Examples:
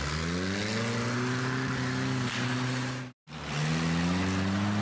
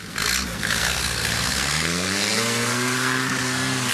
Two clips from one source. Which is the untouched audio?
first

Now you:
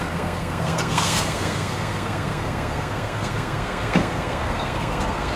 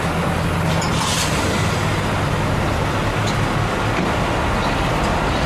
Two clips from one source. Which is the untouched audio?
second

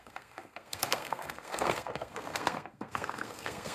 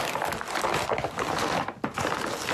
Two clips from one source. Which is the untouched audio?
second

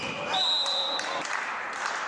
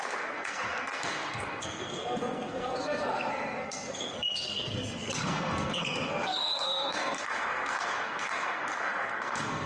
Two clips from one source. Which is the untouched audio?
first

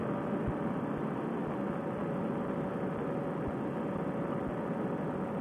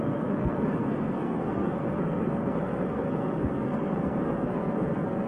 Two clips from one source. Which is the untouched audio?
first